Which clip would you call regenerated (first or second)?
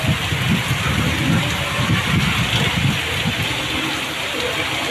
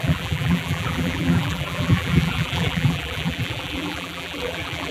second